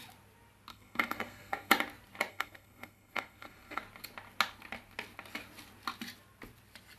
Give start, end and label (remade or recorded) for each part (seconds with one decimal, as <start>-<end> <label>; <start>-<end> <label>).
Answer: 0.0-0.7 recorded; 0.7-1.7 remade; 1.7-2.3 recorded; 2.3-3.8 remade; 3.8-7.0 recorded